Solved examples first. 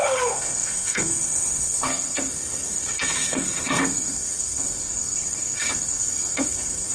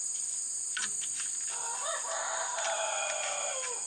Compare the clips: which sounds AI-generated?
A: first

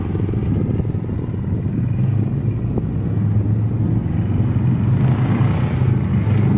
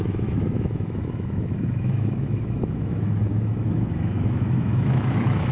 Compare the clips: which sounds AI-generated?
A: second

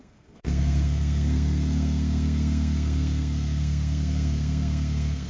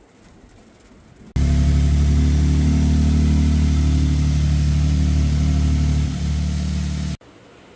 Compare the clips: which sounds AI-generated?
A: first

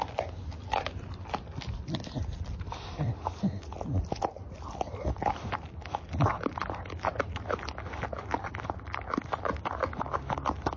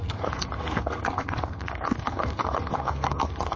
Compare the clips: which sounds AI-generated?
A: second